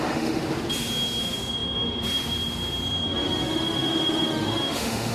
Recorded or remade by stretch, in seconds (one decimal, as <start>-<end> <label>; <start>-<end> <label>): 0.0-0.4 remade; 0.4-1.2 recorded; 1.2-5.1 remade